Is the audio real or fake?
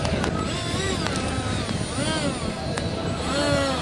real